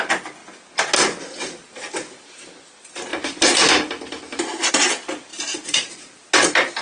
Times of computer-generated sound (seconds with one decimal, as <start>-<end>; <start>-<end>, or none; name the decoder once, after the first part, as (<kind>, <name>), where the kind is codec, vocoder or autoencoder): 3.1-4.7 (vocoder, BigVGAN v2); 5.3-5.9